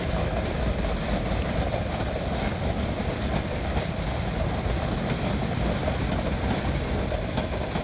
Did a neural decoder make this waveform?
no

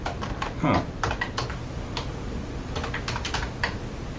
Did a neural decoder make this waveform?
no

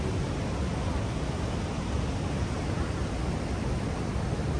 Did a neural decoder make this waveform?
no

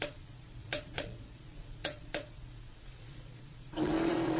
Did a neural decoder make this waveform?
yes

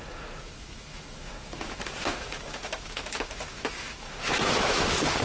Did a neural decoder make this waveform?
yes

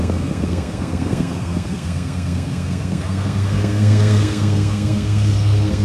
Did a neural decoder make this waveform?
yes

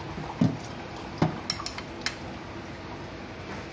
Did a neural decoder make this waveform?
no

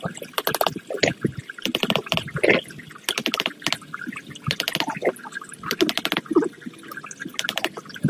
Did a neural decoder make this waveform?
no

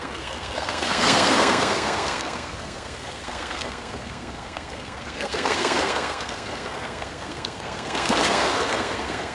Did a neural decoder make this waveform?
yes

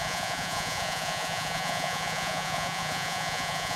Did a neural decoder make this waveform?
yes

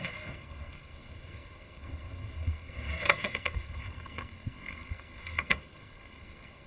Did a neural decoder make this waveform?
yes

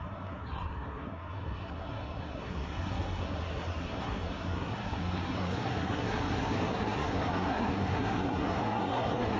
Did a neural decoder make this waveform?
yes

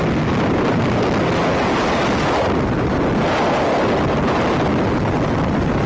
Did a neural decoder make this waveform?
no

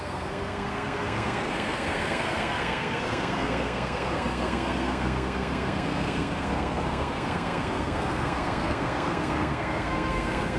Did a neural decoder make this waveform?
yes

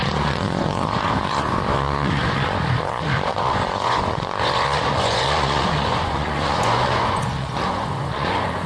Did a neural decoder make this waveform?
yes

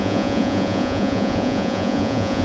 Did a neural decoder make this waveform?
yes